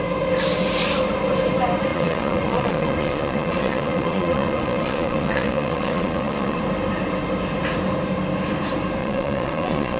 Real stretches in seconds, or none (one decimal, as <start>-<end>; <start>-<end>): 0.0-1.9; 6.6-9.0